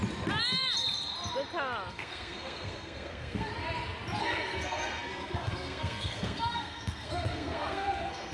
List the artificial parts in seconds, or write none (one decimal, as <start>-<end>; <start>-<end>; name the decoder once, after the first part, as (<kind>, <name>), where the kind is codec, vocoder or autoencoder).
1.9-3.5 (codec, SNAC); 4.2-8.3